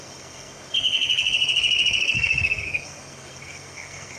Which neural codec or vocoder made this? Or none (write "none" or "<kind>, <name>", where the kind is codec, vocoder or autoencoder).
codec, SNAC